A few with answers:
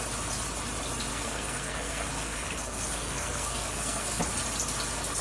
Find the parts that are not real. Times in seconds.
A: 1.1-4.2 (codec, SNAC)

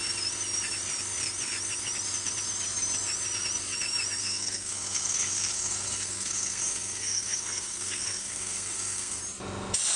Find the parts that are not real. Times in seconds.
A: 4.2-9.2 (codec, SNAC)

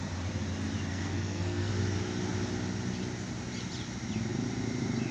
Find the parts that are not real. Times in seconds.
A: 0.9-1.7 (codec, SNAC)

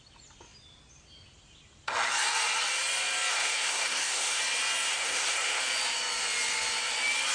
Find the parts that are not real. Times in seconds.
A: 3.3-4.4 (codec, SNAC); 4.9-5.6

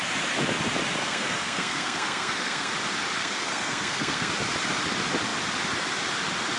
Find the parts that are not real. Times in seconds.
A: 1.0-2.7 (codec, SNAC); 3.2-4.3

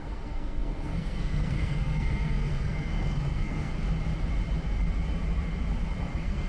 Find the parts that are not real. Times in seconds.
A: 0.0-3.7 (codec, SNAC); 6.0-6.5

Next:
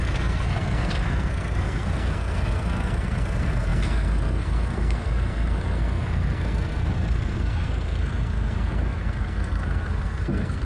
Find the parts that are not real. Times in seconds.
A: 0.0-10.6 (codec, SNAC)

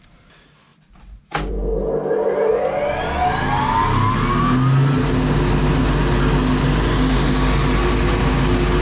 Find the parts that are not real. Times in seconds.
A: none